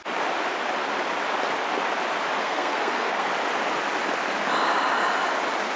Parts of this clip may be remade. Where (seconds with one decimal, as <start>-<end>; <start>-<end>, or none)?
2.4-3.3